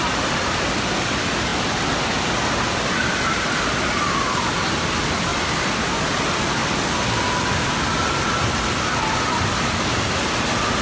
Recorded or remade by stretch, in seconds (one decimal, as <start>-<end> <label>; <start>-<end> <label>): 0.0-10.8 recorded